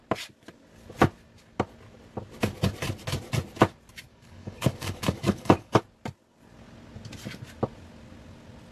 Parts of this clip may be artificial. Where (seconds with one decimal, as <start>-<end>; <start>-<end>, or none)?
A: 4.1-5.8